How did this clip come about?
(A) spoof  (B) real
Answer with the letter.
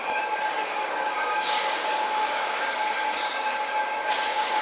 A